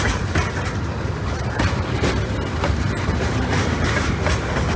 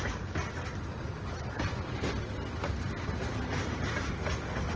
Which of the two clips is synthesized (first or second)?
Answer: first